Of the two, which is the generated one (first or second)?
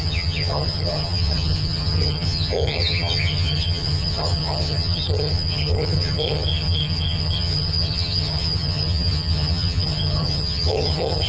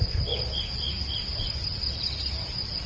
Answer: first